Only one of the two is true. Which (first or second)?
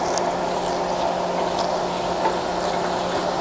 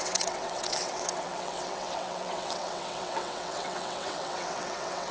first